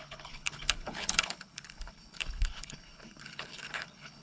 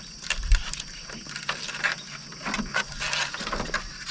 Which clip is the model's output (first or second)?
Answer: first